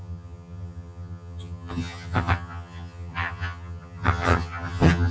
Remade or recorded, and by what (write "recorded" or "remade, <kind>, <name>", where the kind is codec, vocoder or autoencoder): remade, vocoder, HiFi-GAN